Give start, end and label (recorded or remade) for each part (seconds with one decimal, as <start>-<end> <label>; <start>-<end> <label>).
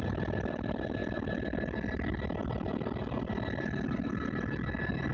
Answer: 0.0-5.1 recorded